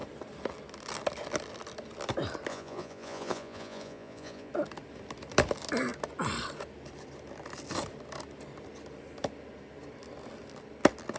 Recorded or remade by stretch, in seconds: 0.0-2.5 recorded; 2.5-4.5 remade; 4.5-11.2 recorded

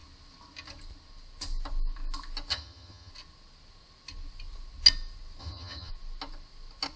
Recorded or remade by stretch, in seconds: 0.0-2.5 recorded; 2.5-3.1 remade; 3.1-5.4 recorded; 5.4-5.9 remade; 5.9-7.0 recorded

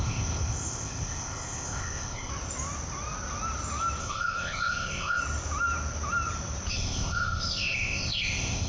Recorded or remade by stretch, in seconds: 0.0-2.3 remade; 2.3-4.0 recorded; 4.0-5.2 remade; 5.2-6.7 recorded; 6.7-8.7 remade

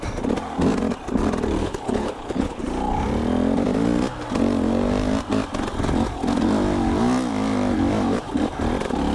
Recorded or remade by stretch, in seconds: 0.0-1.6 recorded; 1.6-2.6 remade; 2.6-9.1 recorded